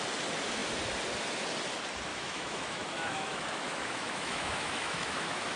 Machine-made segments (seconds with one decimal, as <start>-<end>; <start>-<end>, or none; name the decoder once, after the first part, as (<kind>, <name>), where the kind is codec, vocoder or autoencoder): 2.1-5.6 (autoencoder, DAC-VAE)